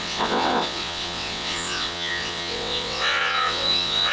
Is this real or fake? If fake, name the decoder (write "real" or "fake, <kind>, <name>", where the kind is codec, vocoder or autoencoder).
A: fake, vocoder, WaveNeXt